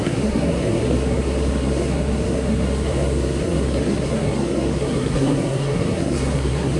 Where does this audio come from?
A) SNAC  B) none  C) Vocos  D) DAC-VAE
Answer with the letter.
A